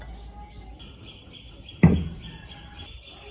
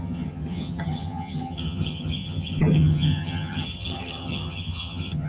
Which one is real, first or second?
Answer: first